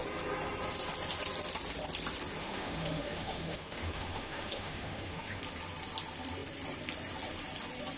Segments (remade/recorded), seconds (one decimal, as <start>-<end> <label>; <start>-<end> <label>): 0.0-2.4 recorded; 2.4-5.4 remade; 5.4-8.0 recorded